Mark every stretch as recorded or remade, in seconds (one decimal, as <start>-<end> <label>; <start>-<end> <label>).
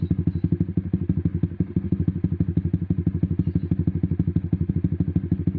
0.0-5.6 recorded